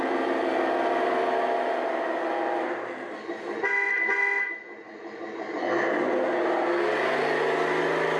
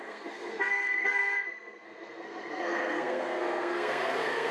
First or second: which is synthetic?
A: second